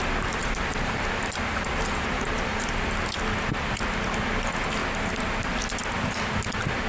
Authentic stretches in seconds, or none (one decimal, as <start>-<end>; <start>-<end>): 0.0-0.4; 2.6-6.9